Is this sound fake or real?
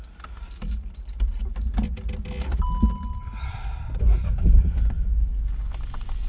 real